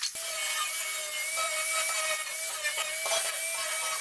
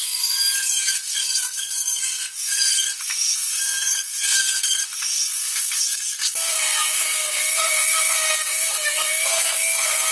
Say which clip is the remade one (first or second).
second